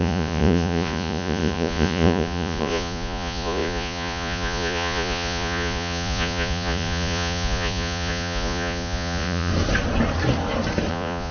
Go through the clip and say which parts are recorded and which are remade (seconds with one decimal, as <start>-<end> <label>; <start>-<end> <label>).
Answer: 0.0-9.5 remade; 9.5-10.9 recorded; 10.9-11.3 remade